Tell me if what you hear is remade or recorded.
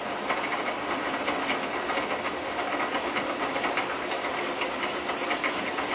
recorded